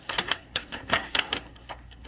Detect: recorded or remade remade